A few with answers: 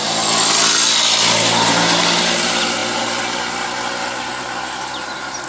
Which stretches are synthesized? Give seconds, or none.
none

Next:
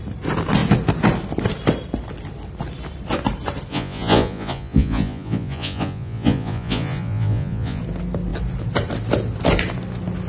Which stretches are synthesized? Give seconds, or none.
3.7-7.8 (vocoder, Vocos)

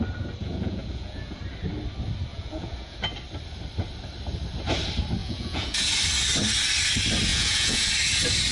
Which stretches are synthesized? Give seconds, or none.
0.4-1.4 (vocoder, Vocos); 2.3-3.0; 5.2-5.9; 7.3-7.9

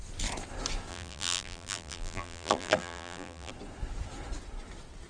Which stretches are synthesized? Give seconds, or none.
0.9-3.5 (vocoder, BigVGAN v2)

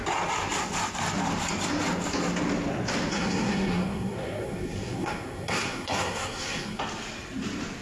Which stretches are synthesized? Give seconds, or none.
3.1-6.8 (codec, SNAC)

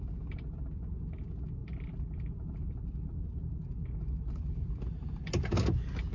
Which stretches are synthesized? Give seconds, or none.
1.6-5.2 (vocoder, BigVGAN v2)